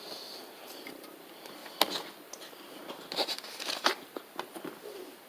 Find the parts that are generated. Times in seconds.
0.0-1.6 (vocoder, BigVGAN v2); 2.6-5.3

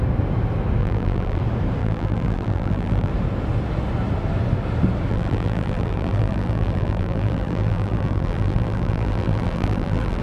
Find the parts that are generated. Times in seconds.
0.8-1.4 (vocoder, BigVGAN v2); 1.8-3.1; 5.1-10.2

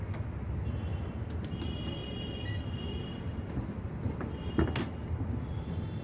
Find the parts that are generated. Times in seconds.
2.0-3.5 (vocoder, BigVGAN v2)

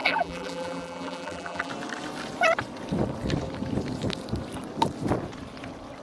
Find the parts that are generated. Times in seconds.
0.0-1.7 (vocoder, BigVGAN v2)

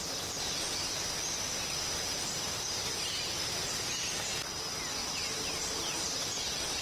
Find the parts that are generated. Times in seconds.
2.5-3.9 (vocoder, BigVGAN v2); 5.0-6.3

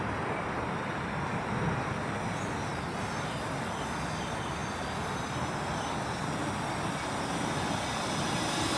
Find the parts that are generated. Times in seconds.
none

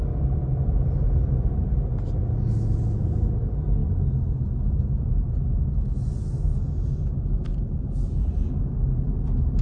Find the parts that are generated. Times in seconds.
7.5-8.8 (vocoder, BigVGAN v2)

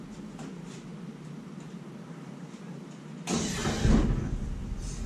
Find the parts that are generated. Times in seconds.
0.0-3.6 (vocoder, BigVGAN v2)